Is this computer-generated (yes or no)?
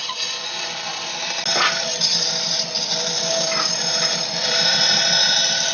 no